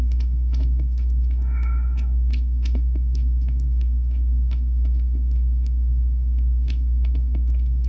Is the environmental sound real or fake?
fake